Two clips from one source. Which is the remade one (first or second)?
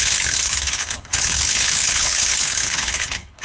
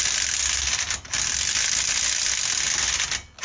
first